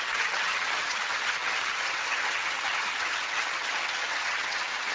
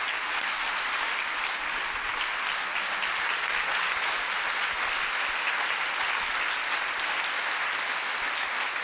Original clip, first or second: second